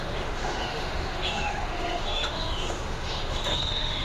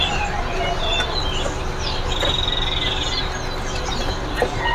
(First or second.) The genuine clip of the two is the second